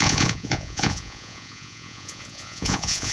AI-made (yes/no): yes